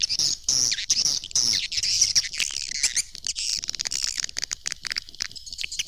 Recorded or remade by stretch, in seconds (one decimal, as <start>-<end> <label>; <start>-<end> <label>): 0.0-5.9 recorded